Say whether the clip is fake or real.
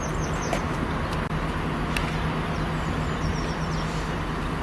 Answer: real